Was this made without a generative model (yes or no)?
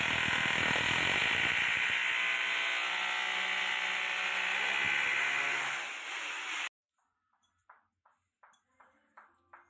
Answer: yes